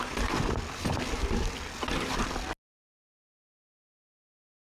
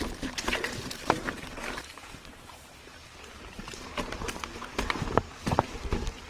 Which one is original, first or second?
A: first